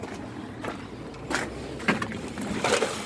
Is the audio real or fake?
real